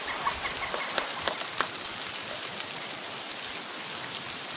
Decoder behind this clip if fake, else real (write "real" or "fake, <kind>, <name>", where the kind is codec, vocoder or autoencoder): real